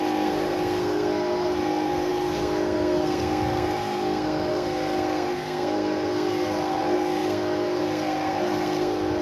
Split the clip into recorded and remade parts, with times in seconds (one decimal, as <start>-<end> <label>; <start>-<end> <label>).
0.0-9.2 remade